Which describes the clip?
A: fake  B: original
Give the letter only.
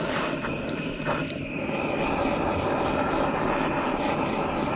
B